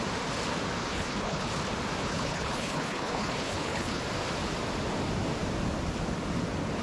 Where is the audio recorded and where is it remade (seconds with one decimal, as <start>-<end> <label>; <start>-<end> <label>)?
0.0-0.8 recorded; 0.8-1.5 remade; 1.5-2.0 recorded; 2.0-4.0 remade; 4.0-6.8 recorded